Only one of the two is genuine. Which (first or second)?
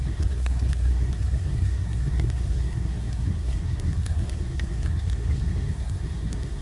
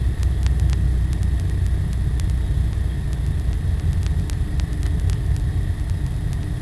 second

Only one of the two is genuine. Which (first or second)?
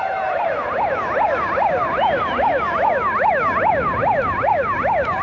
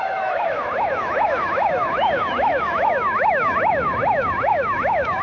first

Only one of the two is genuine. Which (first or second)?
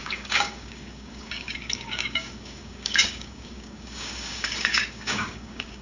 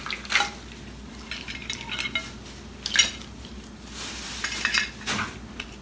second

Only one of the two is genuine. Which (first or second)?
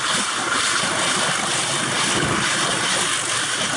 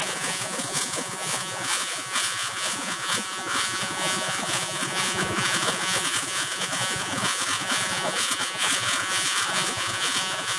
first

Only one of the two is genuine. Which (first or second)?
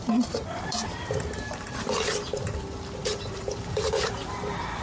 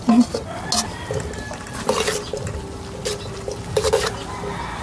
second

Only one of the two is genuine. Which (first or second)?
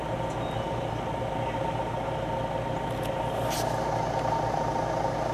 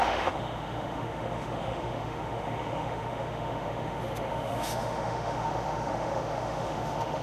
first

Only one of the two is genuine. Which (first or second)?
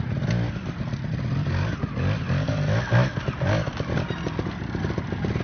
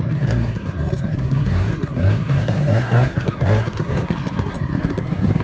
first